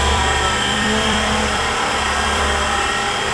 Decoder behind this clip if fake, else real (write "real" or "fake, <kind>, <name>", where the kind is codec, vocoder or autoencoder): fake, vocoder, BigVGAN v2